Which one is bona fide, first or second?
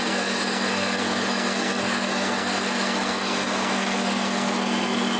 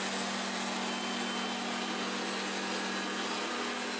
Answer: second